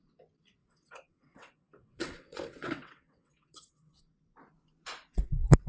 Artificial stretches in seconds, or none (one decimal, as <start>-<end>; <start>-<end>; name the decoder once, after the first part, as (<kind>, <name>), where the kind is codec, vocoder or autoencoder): 0.6-4.0 (vocoder, WaveNeXt)